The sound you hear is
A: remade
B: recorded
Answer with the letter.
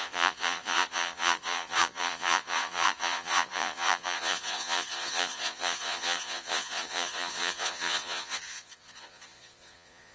A